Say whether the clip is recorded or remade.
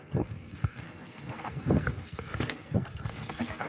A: remade